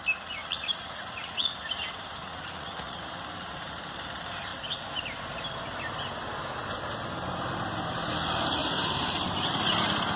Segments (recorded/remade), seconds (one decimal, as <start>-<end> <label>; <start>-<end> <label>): 0.0-0.4 recorded; 0.4-1.5 remade; 1.5-2.2 recorded; 2.2-3.0 remade; 3.0-10.2 recorded

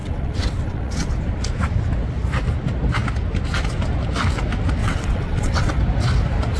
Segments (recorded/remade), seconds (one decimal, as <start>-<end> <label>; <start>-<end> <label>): 0.0-1.1 remade; 1.1-4.8 recorded; 4.8-5.8 remade; 5.8-6.6 recorded

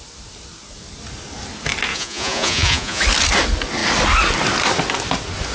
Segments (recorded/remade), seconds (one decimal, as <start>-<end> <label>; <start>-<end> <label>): 0.0-1.9 recorded; 1.9-3.0 remade; 3.0-5.5 recorded

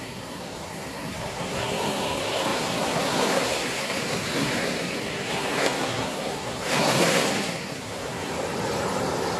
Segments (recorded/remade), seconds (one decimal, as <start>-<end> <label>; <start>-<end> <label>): 0.0-8.3 remade; 8.3-9.4 recorded

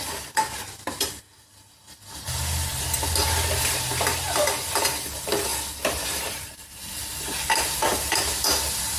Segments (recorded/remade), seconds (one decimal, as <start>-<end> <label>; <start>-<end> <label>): 0.0-9.0 recorded

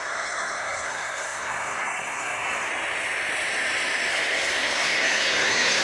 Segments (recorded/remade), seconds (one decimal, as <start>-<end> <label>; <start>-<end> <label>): 0.0-2.7 remade; 2.7-4.1 recorded; 4.1-5.8 remade

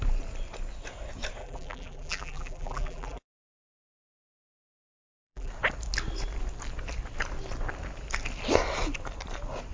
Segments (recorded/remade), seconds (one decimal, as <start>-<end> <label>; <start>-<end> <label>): 0.0-1.4 recorded; 1.4-5.5 remade; 5.5-9.7 recorded